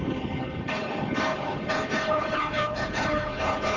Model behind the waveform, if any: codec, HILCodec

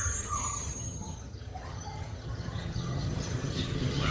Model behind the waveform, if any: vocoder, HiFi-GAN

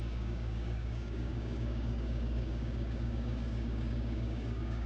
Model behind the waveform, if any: codec, DAC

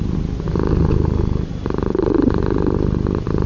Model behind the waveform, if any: none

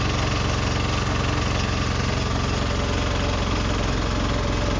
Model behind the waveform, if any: none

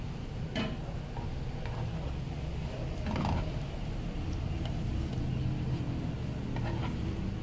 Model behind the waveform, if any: none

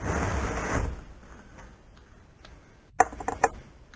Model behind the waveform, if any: none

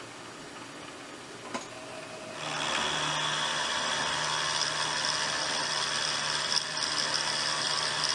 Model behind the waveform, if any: none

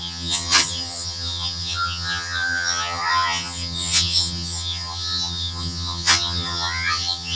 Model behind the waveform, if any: vocoder, HiFi-GAN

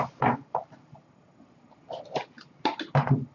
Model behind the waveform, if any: none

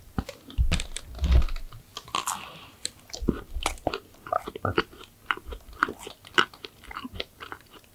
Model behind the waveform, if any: none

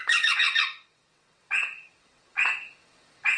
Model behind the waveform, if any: vocoder, WaveNeXt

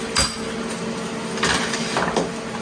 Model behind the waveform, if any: none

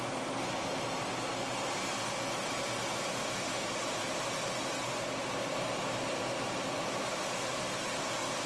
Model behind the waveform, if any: none